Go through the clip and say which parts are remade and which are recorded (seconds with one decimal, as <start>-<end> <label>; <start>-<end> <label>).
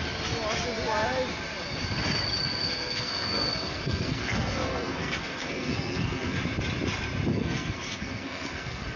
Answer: 0.0-2.6 recorded; 2.6-6.4 remade; 6.4-7.3 recorded; 7.3-9.0 remade